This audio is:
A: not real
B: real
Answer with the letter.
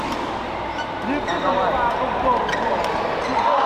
B